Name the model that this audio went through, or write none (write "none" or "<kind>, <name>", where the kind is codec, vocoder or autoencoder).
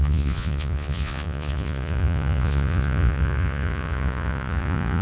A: vocoder, Vocos